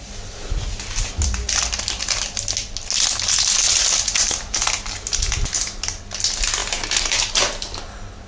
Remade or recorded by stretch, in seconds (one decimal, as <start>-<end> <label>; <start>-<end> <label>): 0.0-8.3 recorded